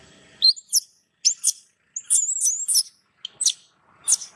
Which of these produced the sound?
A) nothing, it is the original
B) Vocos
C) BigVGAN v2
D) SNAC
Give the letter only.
A